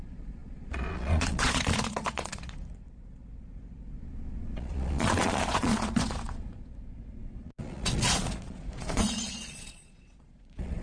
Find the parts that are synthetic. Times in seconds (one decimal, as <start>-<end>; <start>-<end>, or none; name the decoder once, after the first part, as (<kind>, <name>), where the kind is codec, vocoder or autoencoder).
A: 0.0-10.8 (vocoder, Vocos)